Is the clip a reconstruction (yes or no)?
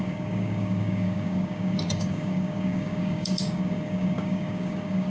yes